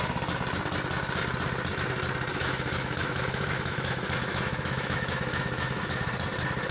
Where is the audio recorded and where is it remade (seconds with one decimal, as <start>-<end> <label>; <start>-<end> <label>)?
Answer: 0.0-2.3 recorded; 2.3-6.0 remade; 6.0-6.7 recorded